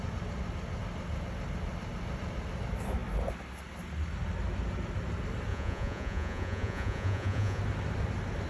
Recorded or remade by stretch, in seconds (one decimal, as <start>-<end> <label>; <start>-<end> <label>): 0.0-5.5 recorded; 5.5-7.6 remade; 7.6-8.5 recorded